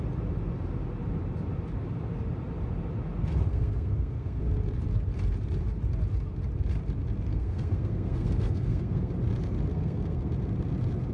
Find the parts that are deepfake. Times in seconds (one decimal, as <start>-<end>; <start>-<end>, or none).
3.5-4.4; 7.3-9.1; 9.7-10.3